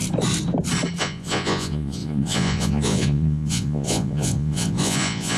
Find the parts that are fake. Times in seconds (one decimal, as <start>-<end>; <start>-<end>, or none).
1.0-5.4